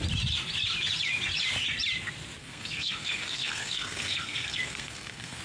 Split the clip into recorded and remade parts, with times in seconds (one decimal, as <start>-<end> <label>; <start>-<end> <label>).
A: 0.0-2.4 recorded; 2.4-5.4 remade